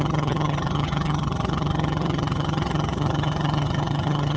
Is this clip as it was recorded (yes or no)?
no